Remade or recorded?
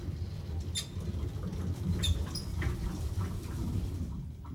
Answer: recorded